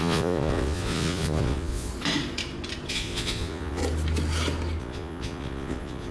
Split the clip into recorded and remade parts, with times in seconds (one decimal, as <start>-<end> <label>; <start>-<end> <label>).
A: 0.0-1.9 remade; 1.9-2.9 recorded; 2.9-3.8 remade; 3.8-4.8 recorded; 4.8-6.1 remade